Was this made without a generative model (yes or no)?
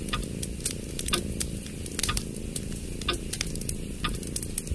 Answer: yes